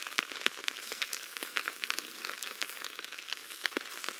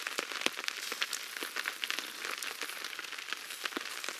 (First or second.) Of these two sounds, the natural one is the second